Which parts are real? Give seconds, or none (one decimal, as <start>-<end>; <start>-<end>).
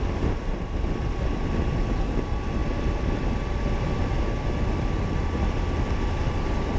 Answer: 0.0-6.8